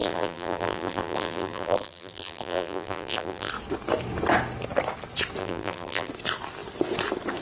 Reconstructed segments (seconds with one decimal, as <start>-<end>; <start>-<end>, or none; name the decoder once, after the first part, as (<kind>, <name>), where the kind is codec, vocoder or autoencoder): 0.0-3.5 (vocoder, BigVGAN v2); 5.4-6.1